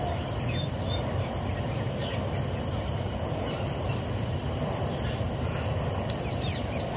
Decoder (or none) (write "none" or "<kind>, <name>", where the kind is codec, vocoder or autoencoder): none